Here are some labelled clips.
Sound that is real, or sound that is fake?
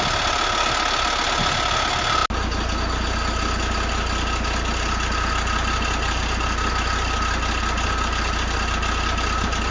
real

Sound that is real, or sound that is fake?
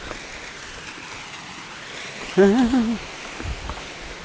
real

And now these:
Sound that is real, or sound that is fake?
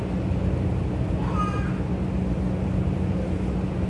real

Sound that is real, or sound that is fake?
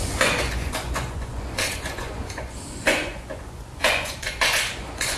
fake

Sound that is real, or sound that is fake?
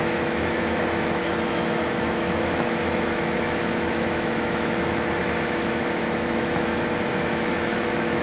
fake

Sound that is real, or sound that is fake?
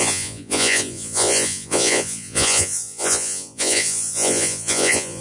fake